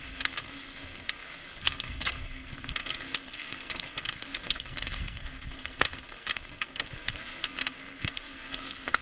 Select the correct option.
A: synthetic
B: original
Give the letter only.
A